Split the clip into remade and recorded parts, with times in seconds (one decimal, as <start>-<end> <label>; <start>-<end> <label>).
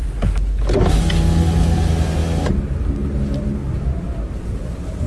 0.0-5.1 recorded